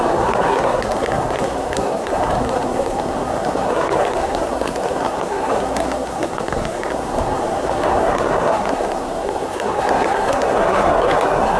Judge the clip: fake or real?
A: fake